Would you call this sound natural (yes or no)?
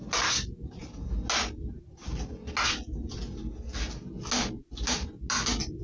yes